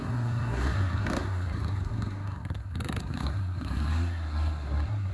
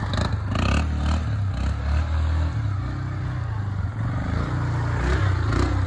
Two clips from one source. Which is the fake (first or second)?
first